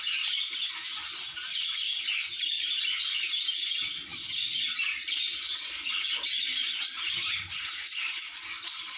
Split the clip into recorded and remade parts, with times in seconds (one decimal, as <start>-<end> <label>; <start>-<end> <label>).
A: 0.0-9.0 recorded